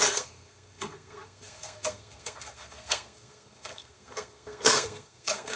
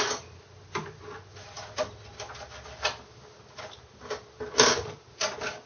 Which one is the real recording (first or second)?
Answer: second